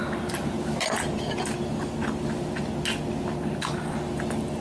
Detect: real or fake real